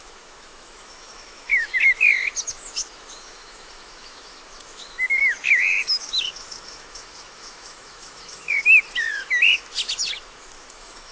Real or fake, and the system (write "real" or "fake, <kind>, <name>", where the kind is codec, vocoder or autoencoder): fake, autoencoder, DAC-VAE